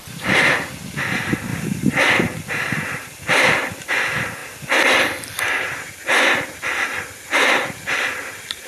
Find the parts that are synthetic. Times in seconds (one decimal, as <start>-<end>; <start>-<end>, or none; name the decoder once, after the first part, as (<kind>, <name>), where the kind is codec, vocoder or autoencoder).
none